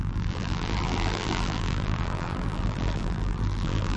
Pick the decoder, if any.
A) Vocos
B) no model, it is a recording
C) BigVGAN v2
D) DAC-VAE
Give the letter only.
C